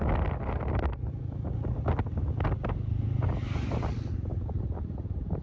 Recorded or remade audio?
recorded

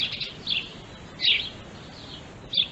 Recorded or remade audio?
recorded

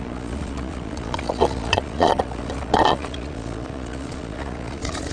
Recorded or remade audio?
remade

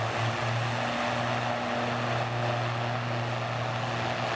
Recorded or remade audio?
recorded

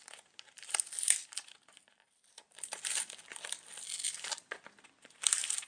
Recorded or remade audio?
recorded